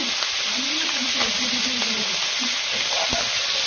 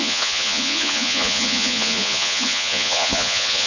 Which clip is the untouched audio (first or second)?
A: first